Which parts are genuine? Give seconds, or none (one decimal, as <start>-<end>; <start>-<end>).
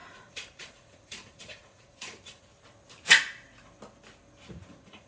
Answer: 2.5-4.5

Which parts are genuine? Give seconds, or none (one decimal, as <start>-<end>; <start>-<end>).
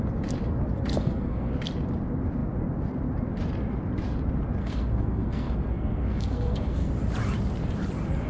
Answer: 0.0-0.9; 1.5-4.6; 6.9-8.3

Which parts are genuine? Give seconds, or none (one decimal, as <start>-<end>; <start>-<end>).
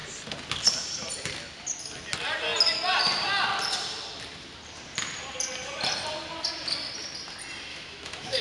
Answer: 0.0-7.7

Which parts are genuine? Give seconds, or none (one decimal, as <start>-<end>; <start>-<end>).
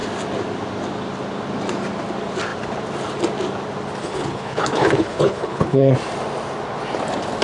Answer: 0.0-4.0; 5.9-7.4